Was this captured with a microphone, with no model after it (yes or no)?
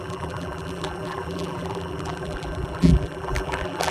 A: no